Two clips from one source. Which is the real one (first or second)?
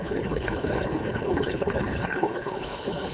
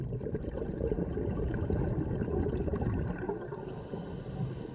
second